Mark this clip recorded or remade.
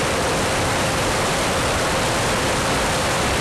remade